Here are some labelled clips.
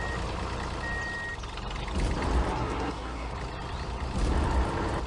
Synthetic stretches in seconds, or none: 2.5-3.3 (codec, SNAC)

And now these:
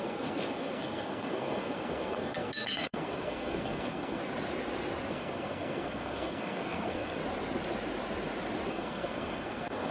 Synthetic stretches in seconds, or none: 0.0-4.2 (codec, SNAC); 5.1-7.2; 8.7-9.9

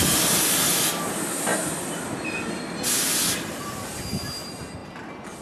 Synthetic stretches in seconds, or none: none

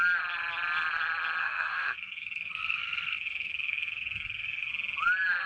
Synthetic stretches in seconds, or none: 1.4-4.7 (codec, SNAC)

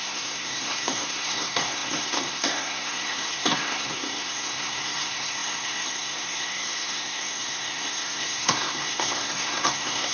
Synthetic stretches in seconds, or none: 0.0-10.1 (codec, SNAC)

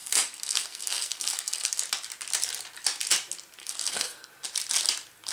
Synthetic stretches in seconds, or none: 0.0-1.8 (codec, SNAC); 3.6-4.3

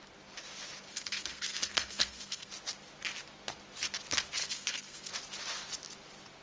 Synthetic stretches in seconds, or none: 0.9-2.5 (codec, SNAC); 4.4-5.1

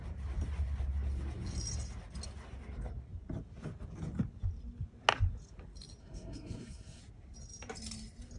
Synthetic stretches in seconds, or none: 6.0-7.0 (codec, SNAC)